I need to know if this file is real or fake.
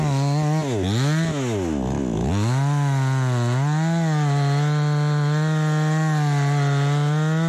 real